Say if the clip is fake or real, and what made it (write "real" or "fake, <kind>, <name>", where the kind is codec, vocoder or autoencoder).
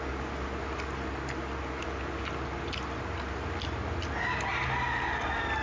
real